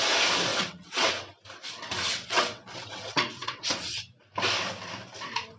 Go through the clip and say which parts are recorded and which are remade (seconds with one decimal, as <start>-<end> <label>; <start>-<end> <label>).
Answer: 0.0-0.5 recorded; 0.5-1.1 remade; 1.1-2.1 recorded; 2.1-4.0 remade; 4.0-5.6 recorded